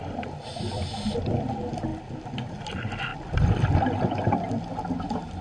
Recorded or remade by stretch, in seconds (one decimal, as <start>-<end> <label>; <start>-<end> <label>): 0.0-5.4 recorded